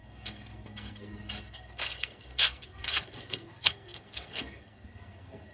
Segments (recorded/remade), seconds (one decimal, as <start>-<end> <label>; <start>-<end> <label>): 0.0-5.5 remade